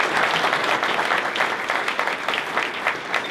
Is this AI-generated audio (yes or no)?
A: no